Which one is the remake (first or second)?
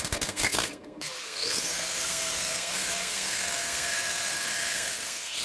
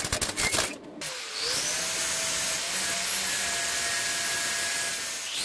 first